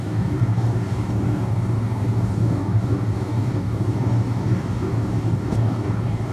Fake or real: fake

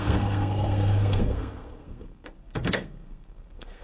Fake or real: fake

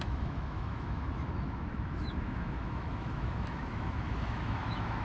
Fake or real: fake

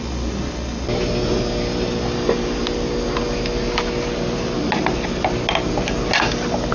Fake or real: real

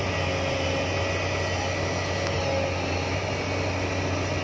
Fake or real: real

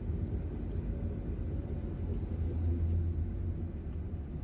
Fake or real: real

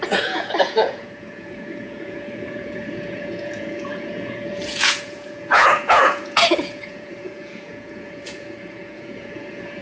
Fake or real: fake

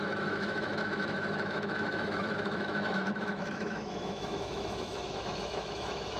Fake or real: fake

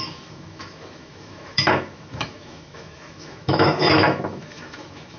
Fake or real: fake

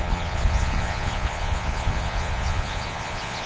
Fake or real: fake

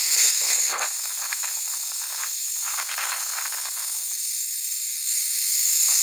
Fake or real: fake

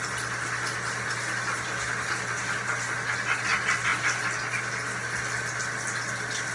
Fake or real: real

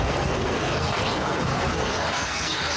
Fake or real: fake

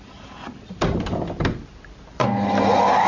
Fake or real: real